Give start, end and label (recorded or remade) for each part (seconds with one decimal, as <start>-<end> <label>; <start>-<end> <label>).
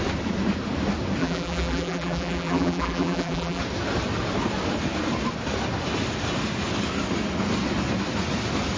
0.0-1.2 recorded; 1.2-3.6 remade; 3.6-8.8 recorded